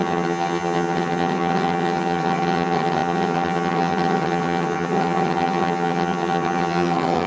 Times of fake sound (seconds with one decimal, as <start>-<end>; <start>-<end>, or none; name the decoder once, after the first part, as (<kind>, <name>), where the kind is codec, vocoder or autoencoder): 0.0-7.3 (vocoder, HiFi-GAN)